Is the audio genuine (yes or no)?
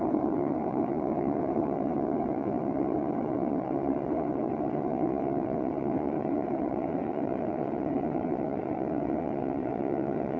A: no